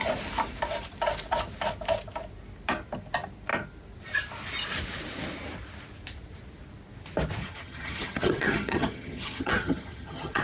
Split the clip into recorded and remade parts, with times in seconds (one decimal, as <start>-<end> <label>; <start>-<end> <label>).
0.0-7.4 recorded; 7.4-10.4 remade